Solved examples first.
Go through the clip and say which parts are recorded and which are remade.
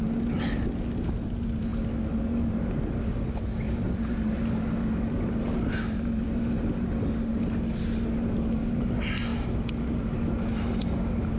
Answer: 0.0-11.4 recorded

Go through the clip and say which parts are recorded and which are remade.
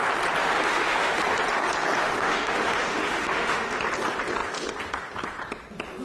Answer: 0.0-0.4 recorded; 0.4-1.2 remade; 1.2-2.0 recorded; 2.0-3.8 remade; 3.8-6.0 recorded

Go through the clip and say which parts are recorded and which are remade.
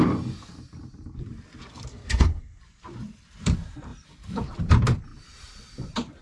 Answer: 0.0-1.9 recorded; 1.9-2.6 remade; 2.6-6.2 recorded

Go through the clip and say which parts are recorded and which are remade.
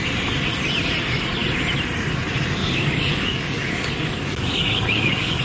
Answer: 0.0-2.6 recorded; 2.6-5.4 remade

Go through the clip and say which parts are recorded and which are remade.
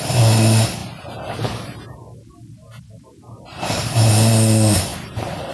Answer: 0.0-0.8 recorded; 0.8-4.1 remade; 4.1-4.9 recorded; 4.9-5.5 remade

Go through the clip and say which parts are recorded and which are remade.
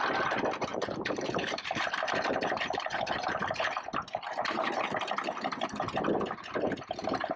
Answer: 0.0-0.7 recorded; 0.7-5.1 remade; 5.1-7.4 recorded